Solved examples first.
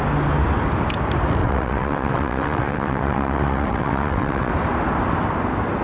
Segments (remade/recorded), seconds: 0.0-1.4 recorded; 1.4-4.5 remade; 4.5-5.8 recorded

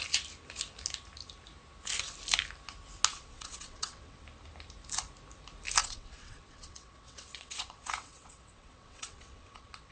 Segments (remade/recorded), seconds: 0.0-3.1 recorded; 3.1-4.2 remade; 4.2-5.8 recorded; 5.8-9.9 remade

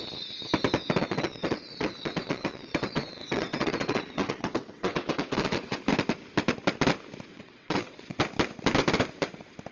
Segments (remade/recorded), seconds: 0.0-1.0 recorded; 1.0-5.8 remade; 5.8-7.3 recorded; 7.3-8.2 remade; 8.2-9.7 recorded

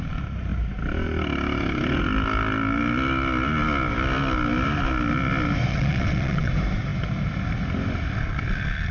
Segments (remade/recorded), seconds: 0.0-5.7 recorded; 5.7-6.5 remade; 6.5-8.9 recorded

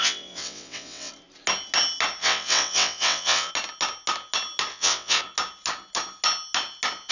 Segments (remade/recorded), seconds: 0.0-1.1 remade; 1.1-2.2 recorded; 2.2-3.5 remade; 3.5-4.7 recorded; 4.7-5.2 remade; 5.2-7.1 recorded

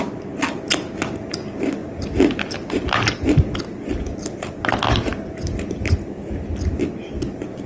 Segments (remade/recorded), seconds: 0.0-7.7 recorded

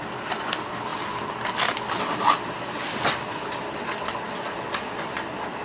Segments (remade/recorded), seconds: 0.0-5.6 recorded

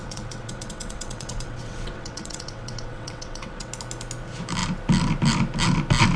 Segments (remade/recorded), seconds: 0.0-3.7 remade; 3.7-6.2 recorded